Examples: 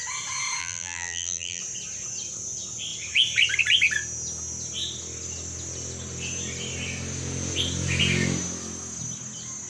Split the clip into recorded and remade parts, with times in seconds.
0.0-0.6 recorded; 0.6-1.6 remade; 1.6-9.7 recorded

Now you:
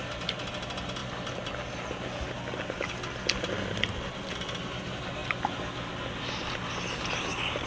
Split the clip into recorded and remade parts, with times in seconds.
0.0-5.2 recorded; 5.2-5.9 remade; 5.9-7.7 recorded

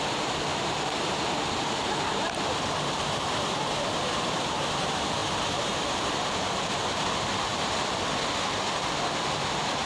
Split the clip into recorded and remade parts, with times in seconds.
0.0-7.5 remade; 7.5-9.2 recorded; 9.2-9.9 remade

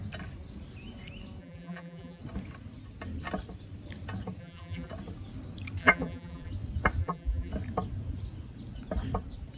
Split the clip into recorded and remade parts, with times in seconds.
0.0-1.4 recorded; 1.4-2.2 remade; 2.2-4.4 recorded; 4.4-4.9 remade; 4.9-5.8 recorded; 5.8-6.5 remade; 6.5-7.0 recorded; 7.0-7.5 remade; 7.5-9.6 recorded

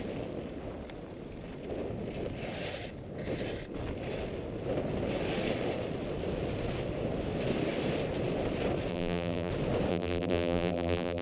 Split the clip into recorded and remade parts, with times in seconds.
0.0-8.9 recorded; 8.9-9.5 remade; 9.5-9.9 recorded; 9.9-11.2 remade